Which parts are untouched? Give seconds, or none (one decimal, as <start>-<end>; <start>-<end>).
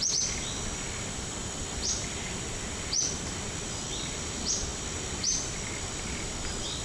0.0-6.8